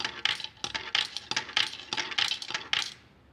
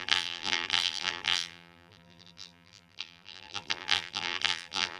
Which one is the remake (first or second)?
second